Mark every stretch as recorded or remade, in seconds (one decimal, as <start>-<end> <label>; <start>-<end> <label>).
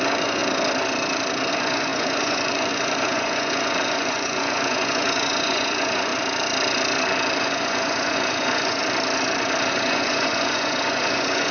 0.0-0.4 remade; 0.4-1.5 recorded; 1.5-6.1 remade; 6.1-7.4 recorded; 7.4-8.8 remade; 8.8-9.7 recorded; 9.7-11.5 remade